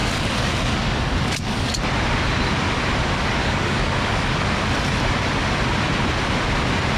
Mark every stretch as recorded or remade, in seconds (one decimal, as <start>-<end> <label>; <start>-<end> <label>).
0.0-1.7 remade; 1.7-3.4 recorded; 3.4-4.5 remade; 4.5-7.0 recorded